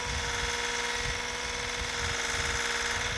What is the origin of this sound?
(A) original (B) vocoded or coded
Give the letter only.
A